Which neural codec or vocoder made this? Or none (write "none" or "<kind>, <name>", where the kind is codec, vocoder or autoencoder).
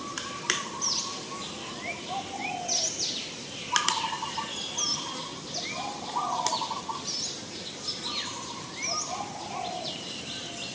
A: none